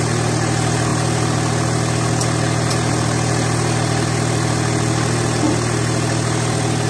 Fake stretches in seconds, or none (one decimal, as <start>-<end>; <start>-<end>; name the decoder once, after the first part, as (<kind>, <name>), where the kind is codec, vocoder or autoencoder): none